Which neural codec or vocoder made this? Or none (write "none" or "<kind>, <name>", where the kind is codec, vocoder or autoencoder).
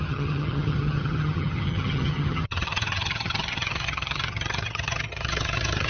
vocoder, HiFi-GAN